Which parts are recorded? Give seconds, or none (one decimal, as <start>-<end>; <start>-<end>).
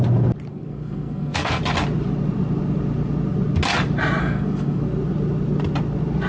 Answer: 0.0-0.5; 1.6-4.2; 4.8-6.3